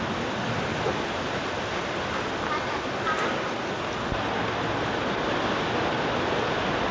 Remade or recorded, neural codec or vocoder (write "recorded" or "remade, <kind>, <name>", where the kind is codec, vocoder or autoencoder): recorded